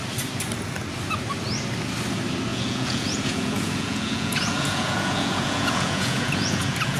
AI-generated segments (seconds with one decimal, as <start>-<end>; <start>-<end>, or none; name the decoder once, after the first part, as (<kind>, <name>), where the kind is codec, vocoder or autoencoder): 2.5-7.0 (vocoder, Vocos)